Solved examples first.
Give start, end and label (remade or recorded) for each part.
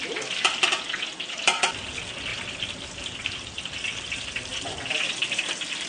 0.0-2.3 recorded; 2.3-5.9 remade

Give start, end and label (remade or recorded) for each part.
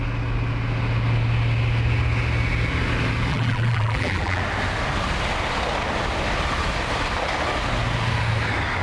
0.0-3.3 recorded; 3.3-4.4 remade; 4.4-8.8 recorded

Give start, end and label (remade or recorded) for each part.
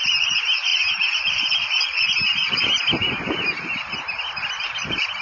0.0-5.2 remade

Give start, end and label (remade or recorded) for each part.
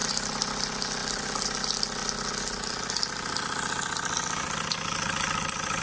0.0-0.5 remade; 0.5-1.0 recorded; 1.0-1.6 remade; 1.6-5.8 recorded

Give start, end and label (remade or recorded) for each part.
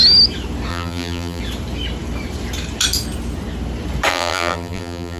0.0-0.7 recorded; 0.7-1.4 remade; 1.4-4.1 recorded; 4.1-5.2 remade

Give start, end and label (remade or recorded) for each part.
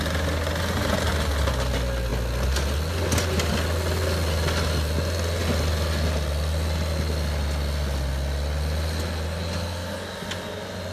0.0-10.9 recorded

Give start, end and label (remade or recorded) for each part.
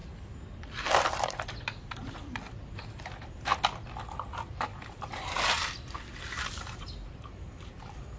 0.0-1.1 recorded; 1.1-3.5 remade; 3.5-4.3 recorded; 4.3-8.2 remade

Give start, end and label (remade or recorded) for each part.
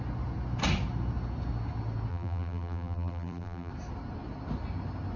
0.0-2.1 recorded; 2.1-3.7 remade; 3.7-5.2 recorded